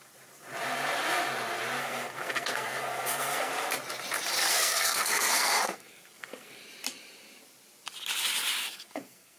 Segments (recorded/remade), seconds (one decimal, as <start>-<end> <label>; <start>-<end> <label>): 0.0-1.8 recorded; 1.8-3.5 remade; 3.5-4.5 recorded; 4.5-6.6 remade; 6.6-8.6 recorded; 8.6-9.4 remade